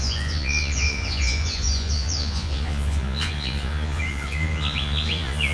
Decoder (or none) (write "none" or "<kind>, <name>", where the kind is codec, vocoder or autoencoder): vocoder, Vocos